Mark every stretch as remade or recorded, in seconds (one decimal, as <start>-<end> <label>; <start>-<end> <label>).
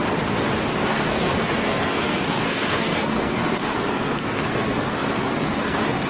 0.0-0.9 recorded; 0.9-6.1 remade